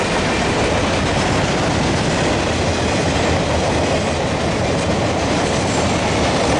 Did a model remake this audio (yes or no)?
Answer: no